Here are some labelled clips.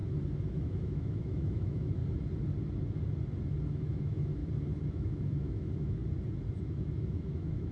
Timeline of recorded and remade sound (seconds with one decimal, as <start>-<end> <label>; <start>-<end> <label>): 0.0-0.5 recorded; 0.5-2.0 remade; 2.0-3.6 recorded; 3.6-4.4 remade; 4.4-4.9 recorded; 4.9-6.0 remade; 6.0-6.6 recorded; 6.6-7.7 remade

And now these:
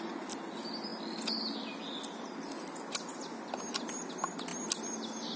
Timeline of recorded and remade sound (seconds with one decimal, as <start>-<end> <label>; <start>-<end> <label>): 0.0-5.4 recorded

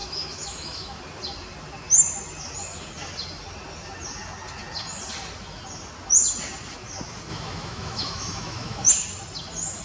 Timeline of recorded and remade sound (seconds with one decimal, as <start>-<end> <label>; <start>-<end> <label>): 0.0-1.0 remade; 1.0-7.3 recorded; 7.3-8.9 remade; 8.9-9.8 recorded

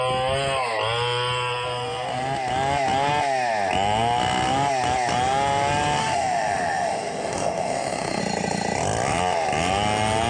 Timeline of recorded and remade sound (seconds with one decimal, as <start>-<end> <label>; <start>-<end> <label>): 0.0-6.0 recorded; 6.0-8.2 remade; 8.2-10.3 recorded

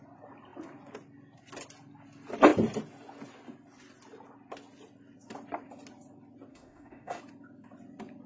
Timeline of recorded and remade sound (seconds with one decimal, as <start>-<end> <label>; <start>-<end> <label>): 0.0-6.5 recorded; 6.5-7.2 remade; 7.2-8.3 recorded

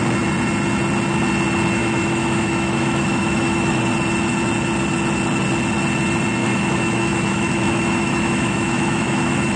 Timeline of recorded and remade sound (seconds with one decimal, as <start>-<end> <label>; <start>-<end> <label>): 0.0-1.8 recorded; 1.8-3.8 remade; 3.8-6.4 recorded; 6.4-9.6 remade

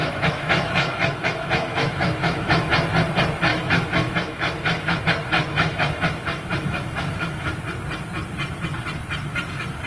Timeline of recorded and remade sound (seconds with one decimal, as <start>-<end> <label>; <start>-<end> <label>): 0.0-2.7 remade; 2.7-3.5 recorded; 3.5-5.0 remade; 5.0-5.5 recorded; 5.5-7.5 remade; 7.5-9.9 recorded